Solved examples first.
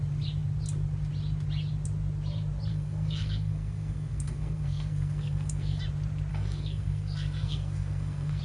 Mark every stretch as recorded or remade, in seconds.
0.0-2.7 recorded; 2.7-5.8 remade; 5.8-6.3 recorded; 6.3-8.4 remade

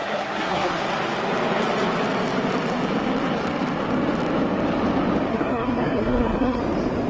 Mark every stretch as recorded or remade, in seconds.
0.0-0.8 remade; 0.8-5.3 recorded; 5.3-6.6 remade; 6.6-7.1 recorded

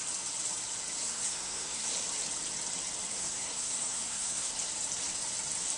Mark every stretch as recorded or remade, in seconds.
0.0-1.0 recorded; 1.0-1.9 remade; 1.9-3.1 recorded; 3.1-4.5 remade; 4.5-5.8 recorded

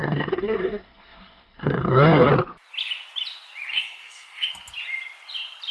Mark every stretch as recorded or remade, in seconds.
0.0-2.3 remade; 2.3-3.7 recorded; 3.7-4.5 remade; 4.5-5.7 recorded

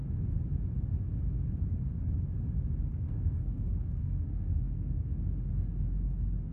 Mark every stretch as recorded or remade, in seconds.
0.0-2.9 recorded; 2.9-5.1 remade; 5.1-6.5 recorded

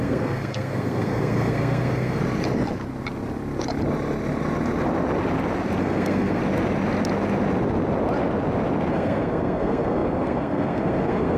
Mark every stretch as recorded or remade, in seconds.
0.0-2.2 remade; 2.2-5.8 recorded; 5.8-6.4 remade; 6.4-8.9 recorded; 8.9-11.4 remade